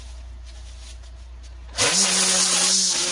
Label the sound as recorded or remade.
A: recorded